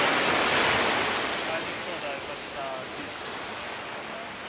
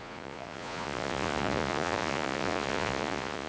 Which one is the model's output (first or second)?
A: second